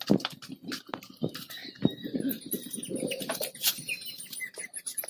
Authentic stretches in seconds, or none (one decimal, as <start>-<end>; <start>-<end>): 0.0-1.6